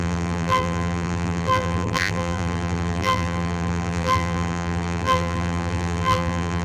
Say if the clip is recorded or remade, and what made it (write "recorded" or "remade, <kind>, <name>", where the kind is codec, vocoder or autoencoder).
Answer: remade, vocoder, BigVGAN v2